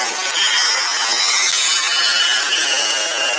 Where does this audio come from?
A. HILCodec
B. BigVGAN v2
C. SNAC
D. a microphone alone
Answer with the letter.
D